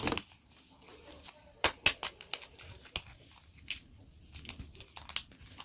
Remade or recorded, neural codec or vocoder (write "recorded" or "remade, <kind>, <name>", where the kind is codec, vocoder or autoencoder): recorded